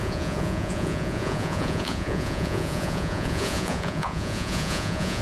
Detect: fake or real fake